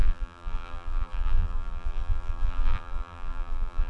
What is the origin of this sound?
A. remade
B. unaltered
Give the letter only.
A